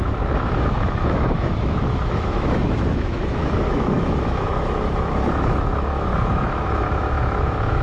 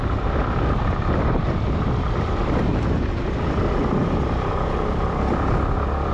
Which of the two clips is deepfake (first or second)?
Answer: first